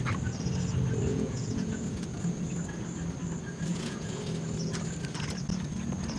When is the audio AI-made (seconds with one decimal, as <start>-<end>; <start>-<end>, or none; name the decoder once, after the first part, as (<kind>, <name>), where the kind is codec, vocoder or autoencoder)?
1.1-2.3 (vocoder, Vocos); 3.7-4.2